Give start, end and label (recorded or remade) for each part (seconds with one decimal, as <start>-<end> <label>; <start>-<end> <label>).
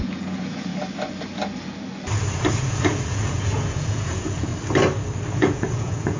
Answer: 0.0-0.7 remade; 0.7-2.5 recorded; 2.5-4.5 remade; 4.5-5.3 recorded; 5.3-6.2 remade